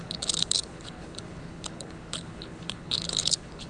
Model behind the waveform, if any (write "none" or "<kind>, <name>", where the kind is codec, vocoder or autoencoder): codec, HILCodec